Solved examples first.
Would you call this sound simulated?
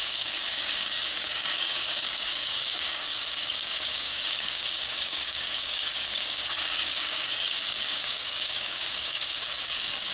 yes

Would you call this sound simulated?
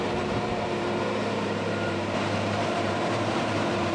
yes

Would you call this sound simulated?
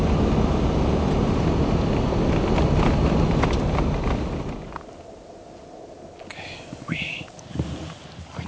no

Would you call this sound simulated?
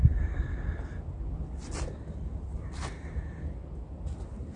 no